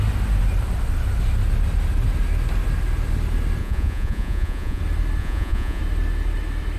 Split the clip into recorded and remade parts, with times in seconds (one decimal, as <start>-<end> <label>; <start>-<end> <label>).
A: 0.0-3.6 recorded; 3.6-4.8 remade; 4.8-5.2 recorded; 5.2-5.8 remade; 5.8-6.8 recorded